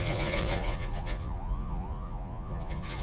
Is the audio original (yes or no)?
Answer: no